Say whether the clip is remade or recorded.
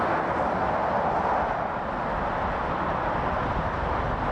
recorded